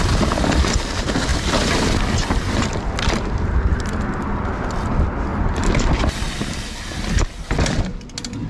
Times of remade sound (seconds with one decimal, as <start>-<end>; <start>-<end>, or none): 1.3-1.9